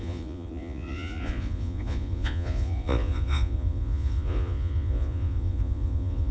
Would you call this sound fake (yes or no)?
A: yes